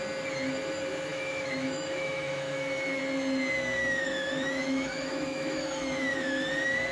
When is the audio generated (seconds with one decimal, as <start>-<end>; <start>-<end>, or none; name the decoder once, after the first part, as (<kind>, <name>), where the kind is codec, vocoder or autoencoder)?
1.1-3.0 (autoencoder, DAC-VAE); 3.8-6.5